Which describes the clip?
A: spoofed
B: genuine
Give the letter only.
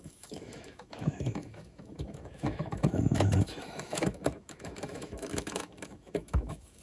A